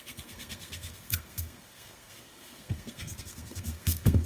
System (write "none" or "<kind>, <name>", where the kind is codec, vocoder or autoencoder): codec, SNAC